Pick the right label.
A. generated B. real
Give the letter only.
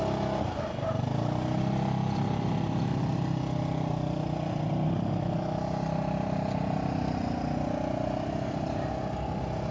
B